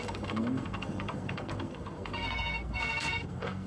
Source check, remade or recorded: remade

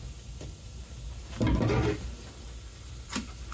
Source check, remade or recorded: recorded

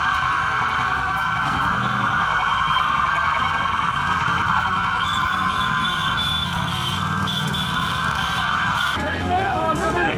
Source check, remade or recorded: remade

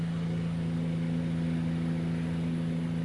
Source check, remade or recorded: recorded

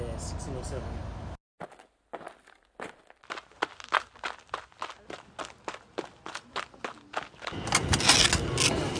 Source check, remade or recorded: recorded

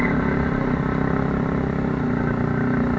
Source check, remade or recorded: recorded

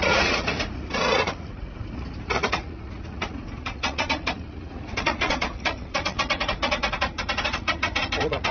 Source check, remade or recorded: remade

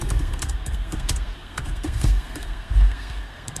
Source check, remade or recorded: remade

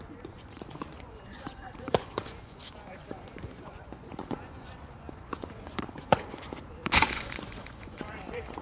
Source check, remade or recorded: remade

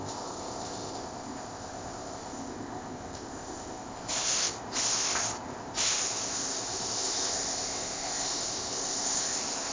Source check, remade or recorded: remade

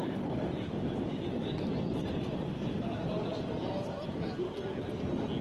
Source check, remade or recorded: recorded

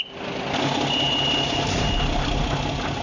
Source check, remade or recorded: recorded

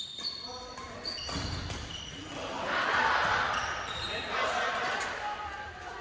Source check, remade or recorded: recorded